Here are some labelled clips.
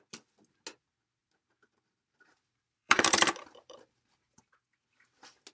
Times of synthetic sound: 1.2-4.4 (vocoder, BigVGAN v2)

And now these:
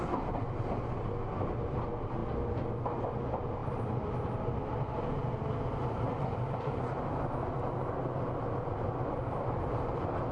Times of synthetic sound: 5.8-6.8 (vocoder, BigVGAN v2)

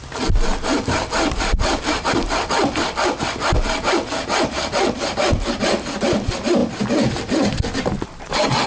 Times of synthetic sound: 0.0-6.6 (vocoder, BigVGAN v2); 7.1-8.7